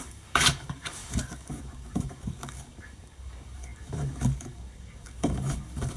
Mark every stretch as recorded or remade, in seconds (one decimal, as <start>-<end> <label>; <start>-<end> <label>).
0.0-6.0 remade